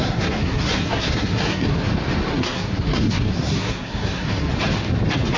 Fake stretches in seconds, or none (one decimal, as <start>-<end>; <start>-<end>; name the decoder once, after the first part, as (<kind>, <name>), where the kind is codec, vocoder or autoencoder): 0.0-1.9 (codec, SNAC); 2.3-4.5